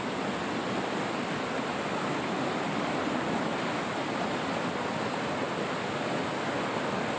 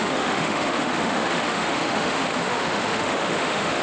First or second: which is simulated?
second